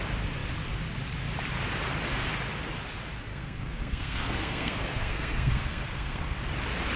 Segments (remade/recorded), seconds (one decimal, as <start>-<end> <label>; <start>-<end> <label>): 0.0-3.3 recorded; 3.3-6.4 remade; 6.4-7.0 recorded